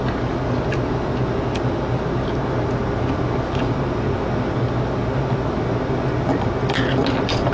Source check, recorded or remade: recorded